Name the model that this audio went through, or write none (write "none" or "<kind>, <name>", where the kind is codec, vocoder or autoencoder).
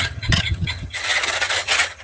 vocoder, HiFi-GAN